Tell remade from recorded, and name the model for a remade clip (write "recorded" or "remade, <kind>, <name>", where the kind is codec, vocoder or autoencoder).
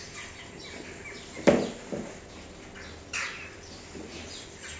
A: recorded